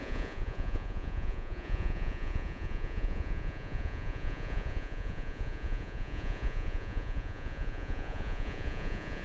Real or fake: fake